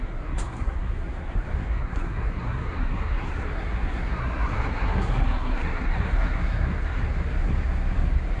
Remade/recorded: remade